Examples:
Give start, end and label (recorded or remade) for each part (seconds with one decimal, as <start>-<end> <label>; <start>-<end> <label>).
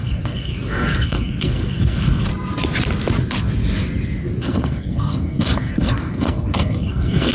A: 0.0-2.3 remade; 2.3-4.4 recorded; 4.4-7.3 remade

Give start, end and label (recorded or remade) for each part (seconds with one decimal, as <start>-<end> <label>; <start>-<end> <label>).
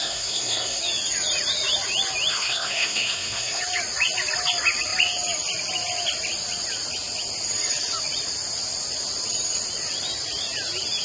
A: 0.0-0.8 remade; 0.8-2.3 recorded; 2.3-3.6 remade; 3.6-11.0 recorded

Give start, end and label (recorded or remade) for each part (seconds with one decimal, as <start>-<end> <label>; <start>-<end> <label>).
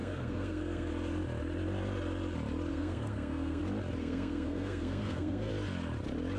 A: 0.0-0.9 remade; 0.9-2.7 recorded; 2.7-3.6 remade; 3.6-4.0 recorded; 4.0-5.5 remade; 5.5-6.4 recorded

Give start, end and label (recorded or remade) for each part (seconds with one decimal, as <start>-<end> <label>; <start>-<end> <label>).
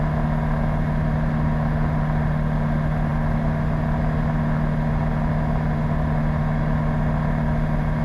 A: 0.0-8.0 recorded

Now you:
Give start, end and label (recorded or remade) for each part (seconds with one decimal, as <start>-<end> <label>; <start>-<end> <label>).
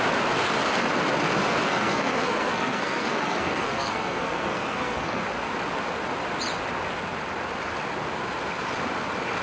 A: 0.0-1.6 recorded; 1.6-5.2 remade; 5.2-9.4 recorded